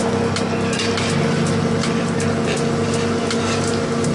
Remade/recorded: recorded